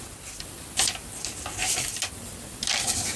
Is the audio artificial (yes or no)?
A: yes